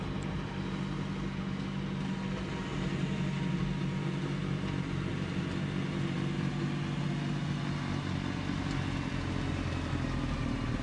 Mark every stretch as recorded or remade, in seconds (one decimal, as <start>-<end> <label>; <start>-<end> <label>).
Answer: 0.0-10.8 recorded